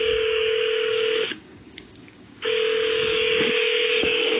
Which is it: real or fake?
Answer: fake